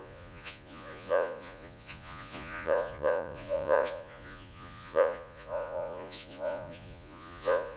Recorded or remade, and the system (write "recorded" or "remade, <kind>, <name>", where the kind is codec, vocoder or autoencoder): remade, vocoder, Vocos